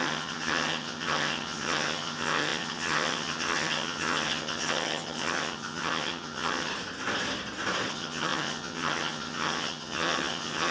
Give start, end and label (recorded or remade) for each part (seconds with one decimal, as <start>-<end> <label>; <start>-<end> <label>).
0.0-6.7 remade; 6.7-7.9 recorded; 7.9-10.7 remade